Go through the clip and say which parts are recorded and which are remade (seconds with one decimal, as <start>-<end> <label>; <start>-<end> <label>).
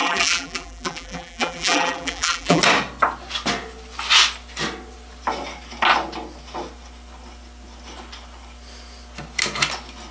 0.0-2.6 remade; 2.6-10.1 recorded